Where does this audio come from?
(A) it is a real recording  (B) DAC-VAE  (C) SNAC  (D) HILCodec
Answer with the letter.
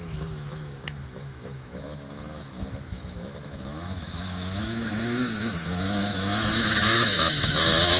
B